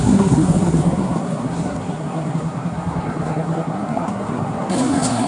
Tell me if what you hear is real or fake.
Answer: fake